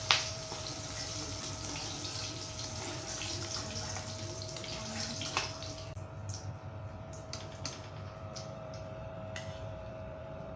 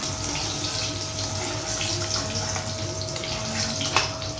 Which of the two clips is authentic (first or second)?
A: second